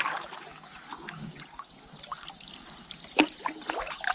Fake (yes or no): no